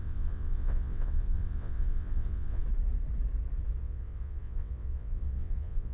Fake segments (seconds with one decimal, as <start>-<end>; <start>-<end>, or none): 0.0-2.6; 3.8-5.9